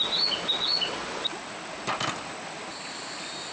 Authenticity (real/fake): real